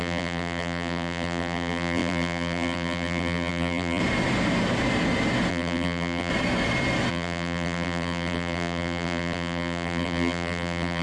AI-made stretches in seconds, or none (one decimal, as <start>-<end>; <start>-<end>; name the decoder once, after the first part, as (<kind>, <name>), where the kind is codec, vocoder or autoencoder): 0.0-4.0 (vocoder, BigVGAN v2); 5.5-6.3; 7.1-11.0